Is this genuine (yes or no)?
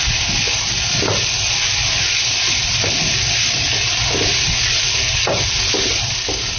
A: yes